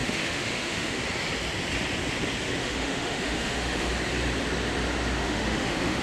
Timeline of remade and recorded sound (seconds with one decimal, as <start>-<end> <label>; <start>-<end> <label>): 0.0-1.0 remade; 1.0-2.6 recorded; 2.6-3.9 remade; 3.9-5.2 recorded; 5.2-6.0 remade